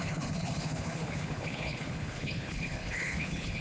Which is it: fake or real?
fake